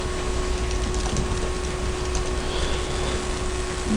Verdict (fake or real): real